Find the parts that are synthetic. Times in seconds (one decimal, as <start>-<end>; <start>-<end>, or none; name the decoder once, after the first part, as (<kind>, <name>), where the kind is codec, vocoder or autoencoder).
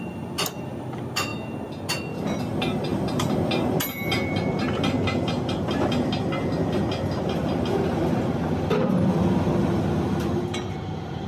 none